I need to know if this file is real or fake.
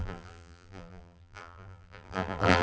fake